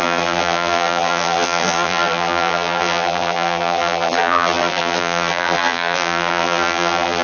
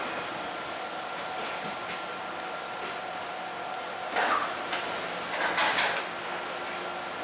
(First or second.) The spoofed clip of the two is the first